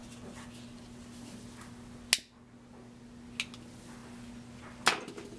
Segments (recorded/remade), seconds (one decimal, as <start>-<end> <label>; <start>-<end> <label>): 0.0-5.4 recorded